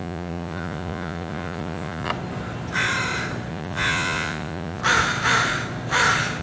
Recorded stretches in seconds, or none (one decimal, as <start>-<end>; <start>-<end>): 2.1-3.5; 4.8-6.4